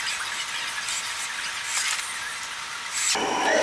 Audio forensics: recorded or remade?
recorded